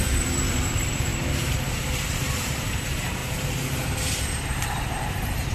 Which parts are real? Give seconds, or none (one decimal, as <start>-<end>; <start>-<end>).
none